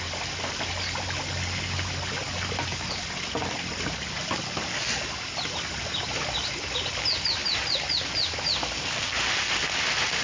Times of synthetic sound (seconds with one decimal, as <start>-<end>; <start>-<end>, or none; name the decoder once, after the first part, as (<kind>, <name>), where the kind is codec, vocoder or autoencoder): none